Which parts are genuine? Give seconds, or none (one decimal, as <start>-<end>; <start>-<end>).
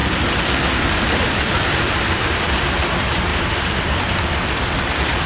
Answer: 2.7-3.3